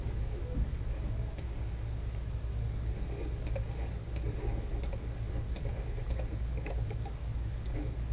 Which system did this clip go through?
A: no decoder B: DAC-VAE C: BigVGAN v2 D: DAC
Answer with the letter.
D